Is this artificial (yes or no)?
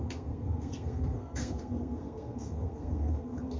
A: yes